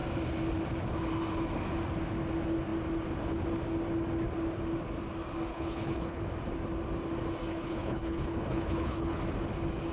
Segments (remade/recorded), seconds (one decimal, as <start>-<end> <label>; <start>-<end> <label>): 0.0-5.5 recorded; 5.5-6.2 remade; 6.2-7.5 recorded; 7.5-9.2 remade; 9.2-9.9 recorded